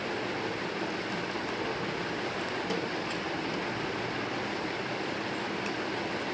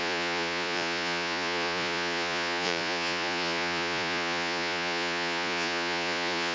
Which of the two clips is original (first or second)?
first